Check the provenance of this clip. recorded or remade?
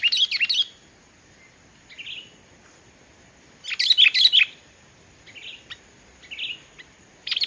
recorded